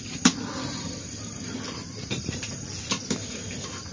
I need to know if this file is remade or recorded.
remade